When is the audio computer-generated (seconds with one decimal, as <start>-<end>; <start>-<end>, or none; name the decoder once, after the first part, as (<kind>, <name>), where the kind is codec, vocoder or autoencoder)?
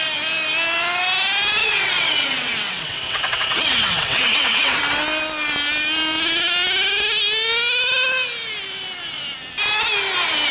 1.6-4.8 (vocoder, WaveNeXt)